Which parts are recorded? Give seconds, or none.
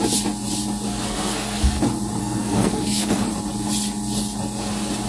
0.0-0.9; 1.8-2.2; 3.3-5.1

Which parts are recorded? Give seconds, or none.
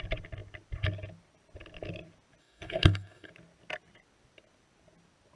0.0-2.4; 3.3-5.4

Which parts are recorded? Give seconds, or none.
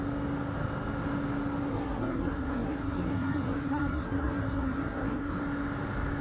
0.0-1.7; 5.4-6.2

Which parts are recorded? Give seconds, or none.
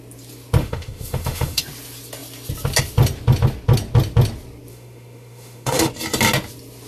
0.0-0.6; 1.6-4.7; 5.9-6.9